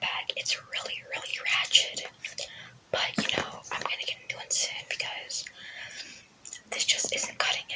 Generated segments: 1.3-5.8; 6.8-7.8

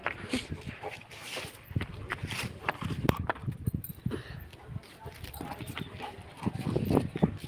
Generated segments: 0.0-7.5